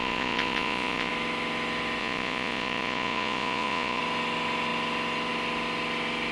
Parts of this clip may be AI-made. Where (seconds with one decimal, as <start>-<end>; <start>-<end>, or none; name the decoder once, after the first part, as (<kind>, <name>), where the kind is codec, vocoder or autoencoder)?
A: 0.0-1.1 (vocoder, Vocos); 2.0-4.0